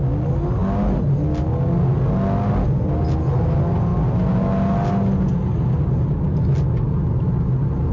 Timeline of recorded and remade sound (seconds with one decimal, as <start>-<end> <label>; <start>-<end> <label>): 0.0-7.9 recorded